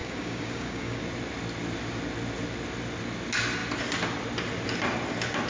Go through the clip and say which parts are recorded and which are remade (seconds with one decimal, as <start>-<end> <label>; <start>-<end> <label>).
0.0-1.0 remade; 1.0-5.5 recorded